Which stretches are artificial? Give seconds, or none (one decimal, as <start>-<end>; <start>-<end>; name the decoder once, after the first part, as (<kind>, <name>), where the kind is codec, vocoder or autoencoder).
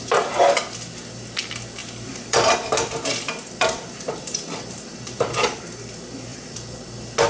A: 1.8-5.6 (vocoder, BigVGAN v2); 6.3-6.8